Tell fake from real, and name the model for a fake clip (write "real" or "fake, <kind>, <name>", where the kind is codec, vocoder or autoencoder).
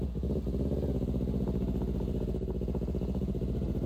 fake, vocoder, Vocos